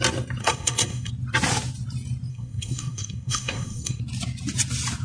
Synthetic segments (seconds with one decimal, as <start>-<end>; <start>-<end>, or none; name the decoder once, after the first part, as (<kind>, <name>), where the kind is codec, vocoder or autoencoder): 0.4-1.1 (codec, SNAC); 2.3-4.0